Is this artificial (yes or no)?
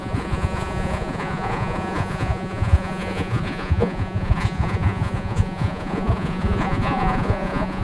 yes